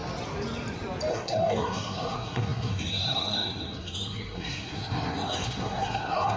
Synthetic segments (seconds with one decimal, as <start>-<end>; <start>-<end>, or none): 1.1-6.4

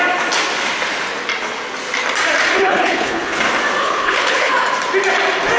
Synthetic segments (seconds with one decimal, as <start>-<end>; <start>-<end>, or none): 2.4-3.4; 3.8-4.5

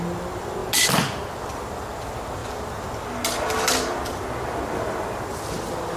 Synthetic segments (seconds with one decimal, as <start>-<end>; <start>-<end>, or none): none

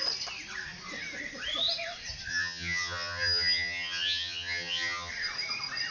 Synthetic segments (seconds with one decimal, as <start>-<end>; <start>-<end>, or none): 2.3-5.1

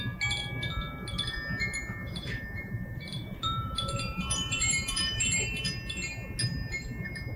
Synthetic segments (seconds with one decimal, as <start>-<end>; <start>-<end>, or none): 2.0-5.6

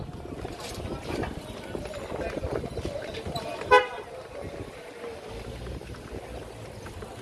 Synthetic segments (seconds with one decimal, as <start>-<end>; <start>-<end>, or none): none

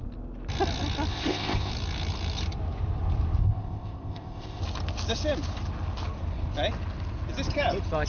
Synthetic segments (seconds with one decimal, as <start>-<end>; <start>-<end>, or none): 1.1-1.7; 3.4-4.6